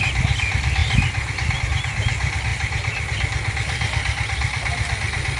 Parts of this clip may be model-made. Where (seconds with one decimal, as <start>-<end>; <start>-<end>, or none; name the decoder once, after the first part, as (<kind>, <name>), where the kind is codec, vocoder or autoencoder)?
none

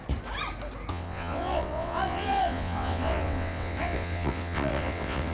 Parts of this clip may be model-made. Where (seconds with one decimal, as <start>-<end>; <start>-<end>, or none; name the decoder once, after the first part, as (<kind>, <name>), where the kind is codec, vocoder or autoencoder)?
0.9-5.3 (vocoder, WaveNeXt)

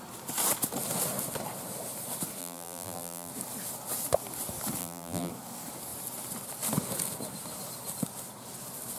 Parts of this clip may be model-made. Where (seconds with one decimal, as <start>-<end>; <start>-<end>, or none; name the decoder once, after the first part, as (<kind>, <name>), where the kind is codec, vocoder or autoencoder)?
2.4-3.3 (vocoder, BigVGAN v2); 4.8-5.3

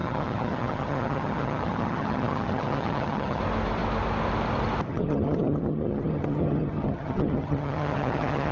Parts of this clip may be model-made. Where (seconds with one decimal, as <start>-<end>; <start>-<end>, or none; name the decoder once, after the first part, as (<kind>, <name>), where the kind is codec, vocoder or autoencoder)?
0.0-3.4 (vocoder, HiFi-GAN); 4.9-8.5

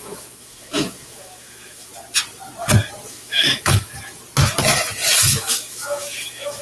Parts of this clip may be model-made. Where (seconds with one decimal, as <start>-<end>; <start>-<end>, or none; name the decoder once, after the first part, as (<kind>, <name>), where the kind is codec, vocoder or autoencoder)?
0.0-1.9 (autoencoder, DAC-VAE); 3.1-3.9; 5.3-6.6

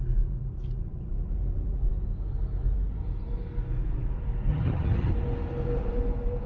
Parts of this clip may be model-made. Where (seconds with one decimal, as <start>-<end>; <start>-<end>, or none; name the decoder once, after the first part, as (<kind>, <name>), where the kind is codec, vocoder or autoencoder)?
4.5-5.1 (vocoder, HiFi-GAN)

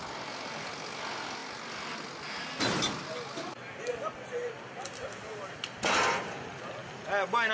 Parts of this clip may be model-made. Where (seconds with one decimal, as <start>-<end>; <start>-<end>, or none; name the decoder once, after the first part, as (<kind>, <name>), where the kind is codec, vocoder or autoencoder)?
none

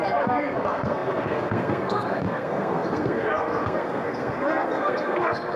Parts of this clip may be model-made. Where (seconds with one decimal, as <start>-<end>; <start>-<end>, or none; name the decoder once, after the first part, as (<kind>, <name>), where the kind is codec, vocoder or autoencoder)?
0.0-5.6 (codec, SNAC)